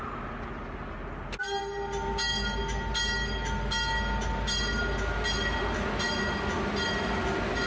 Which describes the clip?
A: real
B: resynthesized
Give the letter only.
A